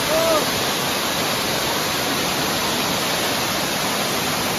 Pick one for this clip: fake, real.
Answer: real